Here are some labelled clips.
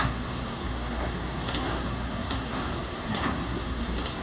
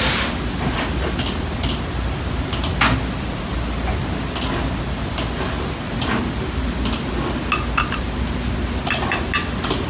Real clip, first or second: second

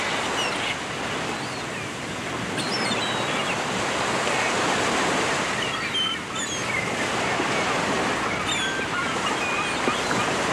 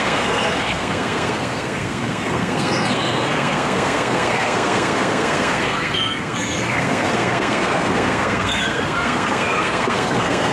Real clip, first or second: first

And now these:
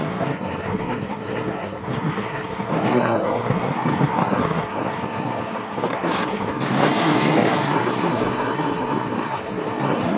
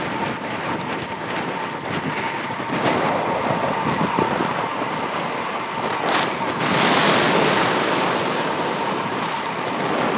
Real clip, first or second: second